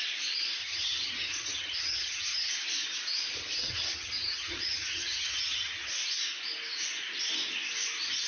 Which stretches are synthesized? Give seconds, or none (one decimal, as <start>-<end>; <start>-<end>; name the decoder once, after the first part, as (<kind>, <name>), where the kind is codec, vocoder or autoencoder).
0.6-2.5 (vocoder, HiFi-GAN); 3.6-5.9